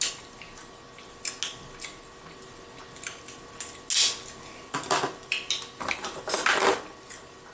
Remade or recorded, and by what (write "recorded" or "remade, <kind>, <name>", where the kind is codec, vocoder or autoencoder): recorded